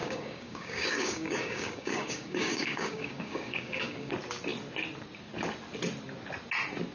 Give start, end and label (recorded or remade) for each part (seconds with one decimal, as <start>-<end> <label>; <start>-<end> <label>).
0.0-4.1 remade; 4.1-6.9 recorded